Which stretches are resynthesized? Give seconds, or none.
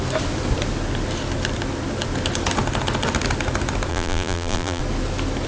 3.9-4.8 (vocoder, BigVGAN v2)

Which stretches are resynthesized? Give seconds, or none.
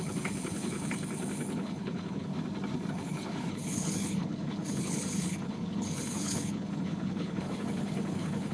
0.0-2.3 (codec, HILCodec); 2.9-8.5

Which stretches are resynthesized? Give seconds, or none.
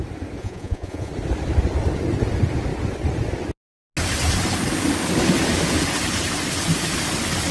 0.4-1.1 (vocoder, Vocos)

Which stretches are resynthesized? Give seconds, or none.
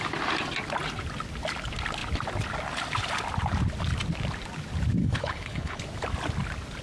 5.0-5.8 (codec, HILCodec)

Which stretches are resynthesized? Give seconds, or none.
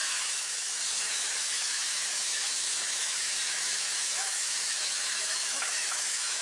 0.0-6.4 (autoencoder, DAC-VAE)